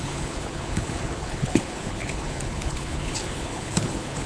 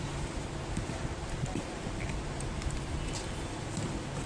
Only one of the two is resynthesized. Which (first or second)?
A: first